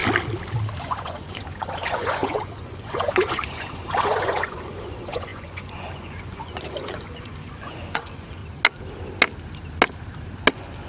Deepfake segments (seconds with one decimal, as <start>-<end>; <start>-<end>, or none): 0.8-8.4; 10.5-10.9